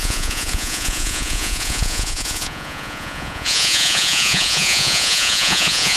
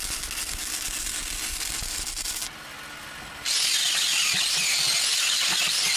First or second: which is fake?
first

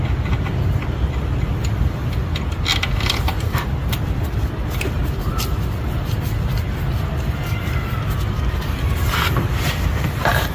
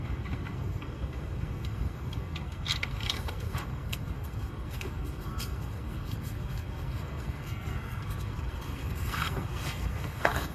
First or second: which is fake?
second